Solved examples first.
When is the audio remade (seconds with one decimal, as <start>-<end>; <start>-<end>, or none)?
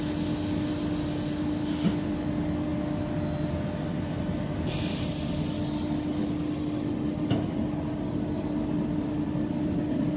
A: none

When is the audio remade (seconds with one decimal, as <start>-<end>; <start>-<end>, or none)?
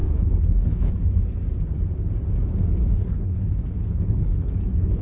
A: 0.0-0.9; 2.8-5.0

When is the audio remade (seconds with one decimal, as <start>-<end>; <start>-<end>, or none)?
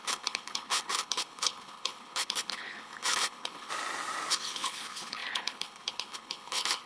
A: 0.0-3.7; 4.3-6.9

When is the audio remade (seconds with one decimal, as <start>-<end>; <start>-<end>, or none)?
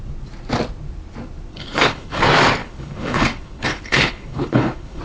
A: 1.5-2.2; 2.6-5.0